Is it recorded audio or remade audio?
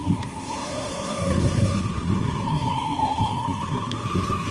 remade